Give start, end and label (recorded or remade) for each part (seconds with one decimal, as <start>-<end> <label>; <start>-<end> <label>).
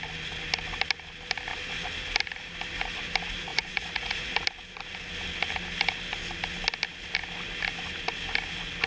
0.0-3.5 recorded; 3.5-4.3 remade; 4.3-8.9 recorded